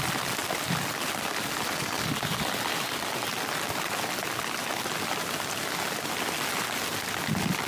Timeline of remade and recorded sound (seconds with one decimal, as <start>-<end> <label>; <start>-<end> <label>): 0.0-7.7 recorded